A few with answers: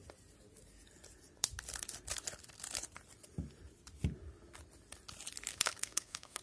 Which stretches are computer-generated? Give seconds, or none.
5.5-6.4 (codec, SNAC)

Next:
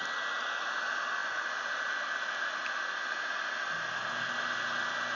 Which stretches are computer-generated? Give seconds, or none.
none

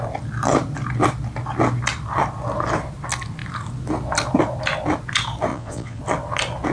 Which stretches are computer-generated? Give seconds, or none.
5.5-6.0 (vocoder, Vocos)

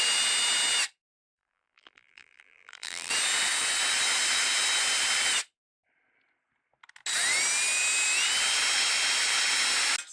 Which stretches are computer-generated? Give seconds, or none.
1.3-3.1 (vocoder, BigVGAN v2)

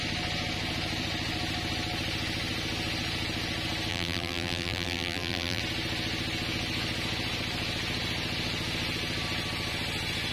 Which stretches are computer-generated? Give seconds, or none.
3.9-5.6 (vocoder, BigVGAN v2)